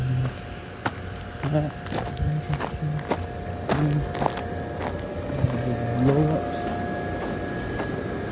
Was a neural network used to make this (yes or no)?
no